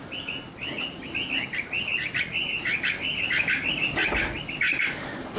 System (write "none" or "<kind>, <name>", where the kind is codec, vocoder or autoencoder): none